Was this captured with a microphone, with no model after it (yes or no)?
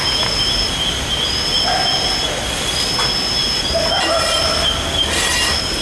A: yes